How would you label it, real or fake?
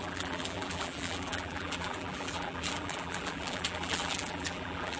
fake